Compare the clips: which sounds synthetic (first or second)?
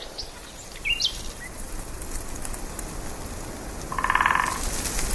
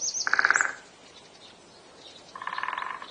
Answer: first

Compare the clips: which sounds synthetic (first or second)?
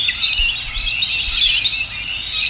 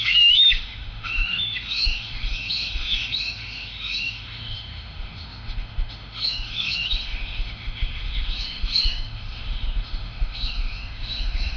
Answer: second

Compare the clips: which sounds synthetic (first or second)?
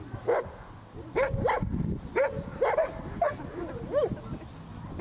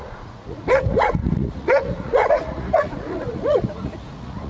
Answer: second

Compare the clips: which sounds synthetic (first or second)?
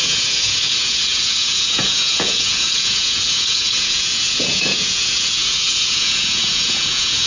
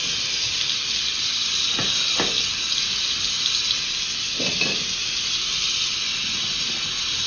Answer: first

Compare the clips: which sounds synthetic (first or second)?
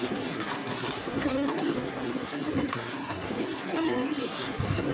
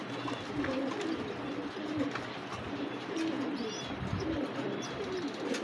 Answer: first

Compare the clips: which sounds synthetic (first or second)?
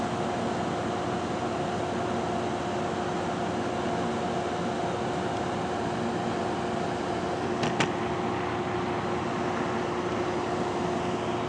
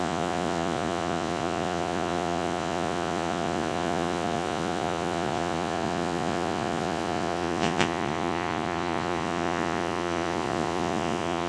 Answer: second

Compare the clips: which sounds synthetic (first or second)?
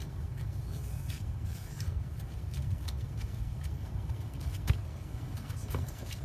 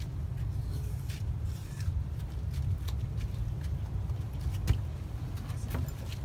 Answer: first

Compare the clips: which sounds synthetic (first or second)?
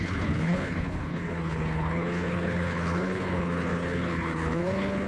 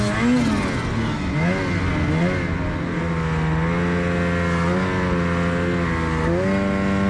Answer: first